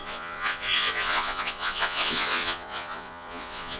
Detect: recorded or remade remade